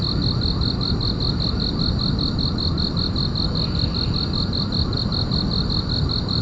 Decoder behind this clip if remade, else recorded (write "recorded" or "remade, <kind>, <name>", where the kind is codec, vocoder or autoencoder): recorded